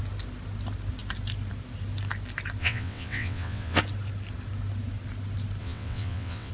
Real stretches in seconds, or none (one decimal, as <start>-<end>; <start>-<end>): 0.0-2.6; 3.8-5.6